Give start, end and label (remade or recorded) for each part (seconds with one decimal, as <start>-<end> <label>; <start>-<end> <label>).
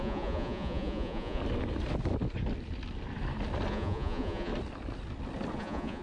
0.0-1.4 remade; 1.4-3.7 recorded; 3.7-4.5 remade; 4.5-5.6 recorded; 5.6-6.0 remade